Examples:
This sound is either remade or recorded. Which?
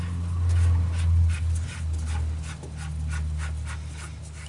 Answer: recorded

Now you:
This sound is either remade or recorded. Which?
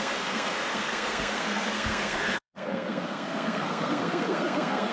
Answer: remade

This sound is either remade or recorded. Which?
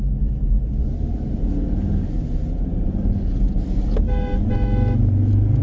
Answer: recorded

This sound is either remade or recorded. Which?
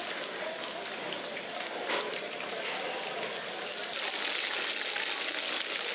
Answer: recorded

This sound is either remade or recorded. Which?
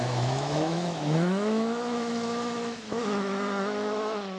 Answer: remade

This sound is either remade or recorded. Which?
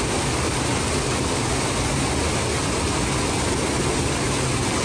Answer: recorded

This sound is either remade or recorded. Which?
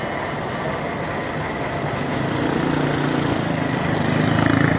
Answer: recorded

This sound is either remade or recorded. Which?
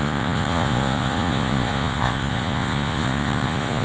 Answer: remade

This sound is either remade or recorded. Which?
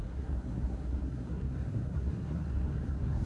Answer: remade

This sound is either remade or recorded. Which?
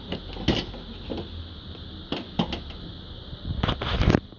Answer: recorded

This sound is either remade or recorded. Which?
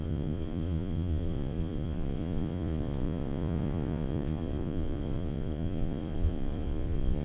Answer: remade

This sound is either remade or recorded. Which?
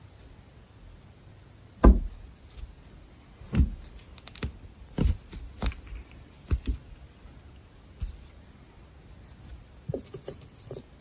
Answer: recorded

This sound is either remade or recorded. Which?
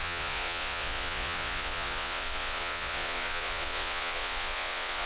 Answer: remade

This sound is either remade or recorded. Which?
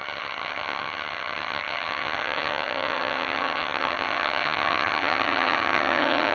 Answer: remade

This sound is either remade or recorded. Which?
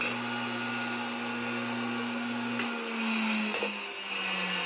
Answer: recorded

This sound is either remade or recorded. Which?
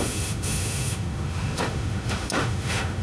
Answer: remade